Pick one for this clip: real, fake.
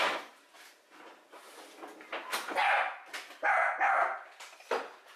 real